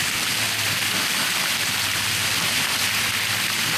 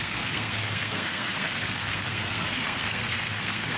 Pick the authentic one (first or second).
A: first